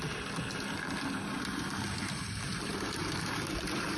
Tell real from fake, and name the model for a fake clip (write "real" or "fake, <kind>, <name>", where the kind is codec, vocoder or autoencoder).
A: fake, vocoder, BigVGAN v2